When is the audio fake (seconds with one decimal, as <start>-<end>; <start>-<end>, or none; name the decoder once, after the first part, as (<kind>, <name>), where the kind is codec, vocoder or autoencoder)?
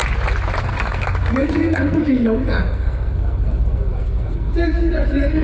0.6-5.4 (codec, SNAC)